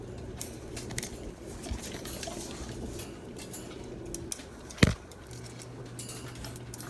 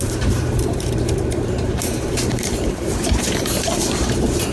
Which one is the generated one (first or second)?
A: second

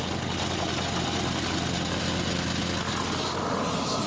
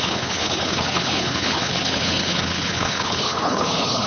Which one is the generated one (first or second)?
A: second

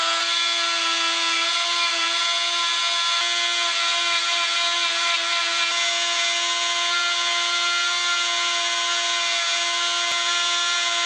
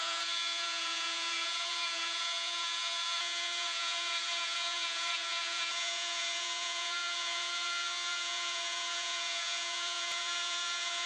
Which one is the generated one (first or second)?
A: second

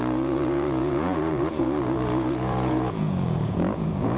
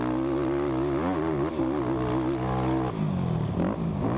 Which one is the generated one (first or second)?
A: first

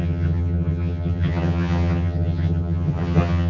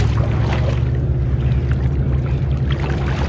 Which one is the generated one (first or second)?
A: first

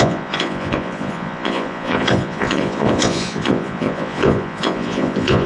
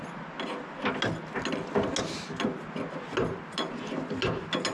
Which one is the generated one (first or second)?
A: first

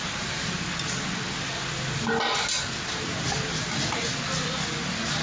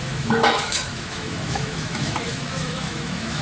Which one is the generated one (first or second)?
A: second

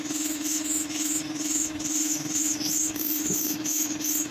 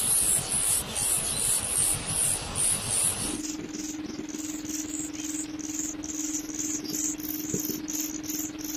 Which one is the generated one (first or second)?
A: first